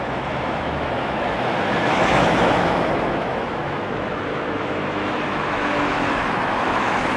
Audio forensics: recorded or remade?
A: remade